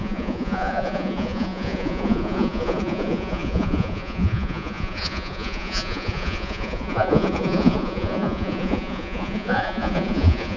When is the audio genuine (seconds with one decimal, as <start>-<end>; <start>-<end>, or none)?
none